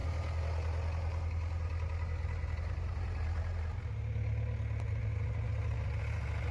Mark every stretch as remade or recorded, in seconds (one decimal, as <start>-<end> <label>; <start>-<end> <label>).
0.0-6.5 recorded